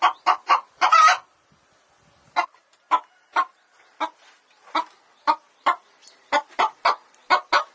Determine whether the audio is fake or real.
real